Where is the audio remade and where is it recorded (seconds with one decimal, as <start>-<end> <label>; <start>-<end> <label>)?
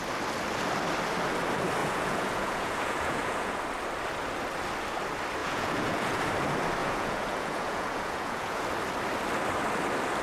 0.0-1.8 recorded; 1.8-3.6 remade; 3.6-5.4 recorded; 5.4-6.2 remade; 6.2-6.8 recorded; 6.8-8.6 remade; 8.6-10.2 recorded